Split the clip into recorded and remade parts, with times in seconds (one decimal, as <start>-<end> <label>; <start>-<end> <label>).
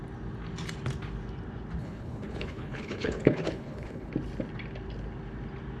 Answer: 0.0-1.8 recorded; 1.8-4.1 remade; 4.1-5.8 recorded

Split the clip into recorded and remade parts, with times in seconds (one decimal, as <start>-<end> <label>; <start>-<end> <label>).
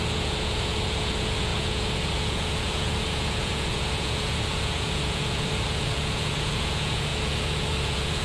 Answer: 0.0-8.2 remade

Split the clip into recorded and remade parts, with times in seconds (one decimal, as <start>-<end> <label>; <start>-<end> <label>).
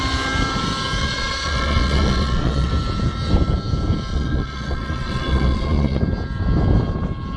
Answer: 0.0-1.0 recorded; 1.0-2.7 remade; 2.7-4.1 recorded; 4.1-6.0 remade; 6.0-7.4 recorded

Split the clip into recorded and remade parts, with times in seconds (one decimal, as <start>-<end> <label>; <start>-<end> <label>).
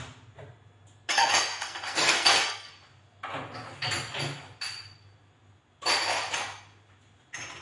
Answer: 0.0-1.1 recorded; 1.1-2.7 remade; 2.7-7.6 recorded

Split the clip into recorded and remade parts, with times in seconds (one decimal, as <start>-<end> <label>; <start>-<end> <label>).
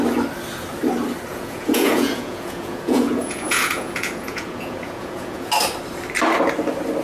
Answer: 0.0-1.3 recorded; 1.3-5.5 remade; 5.5-7.0 recorded